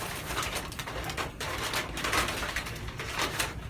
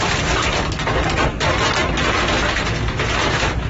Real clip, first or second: second